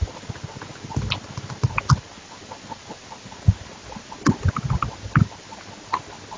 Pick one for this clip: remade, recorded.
recorded